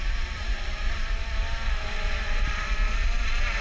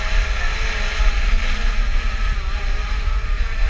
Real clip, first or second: second